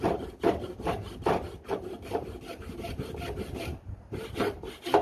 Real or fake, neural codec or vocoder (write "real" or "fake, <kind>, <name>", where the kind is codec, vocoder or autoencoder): real